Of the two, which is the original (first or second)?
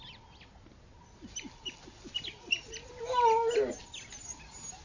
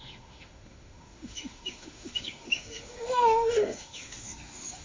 first